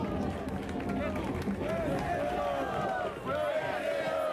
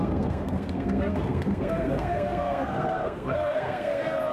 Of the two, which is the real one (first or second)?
first